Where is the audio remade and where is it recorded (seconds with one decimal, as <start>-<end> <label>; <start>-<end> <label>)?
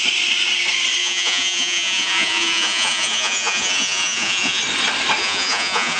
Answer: 0.0-1.0 recorded; 1.0-4.6 remade; 4.6-5.2 recorded; 5.2-6.0 remade